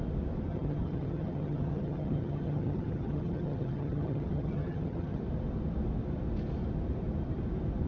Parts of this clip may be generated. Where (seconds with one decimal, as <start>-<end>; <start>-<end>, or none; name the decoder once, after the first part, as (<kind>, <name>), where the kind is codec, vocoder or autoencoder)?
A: 0.5-5.2 (vocoder, HiFi-GAN)